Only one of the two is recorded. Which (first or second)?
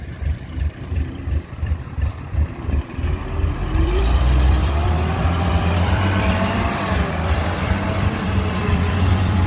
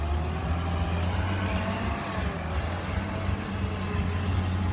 second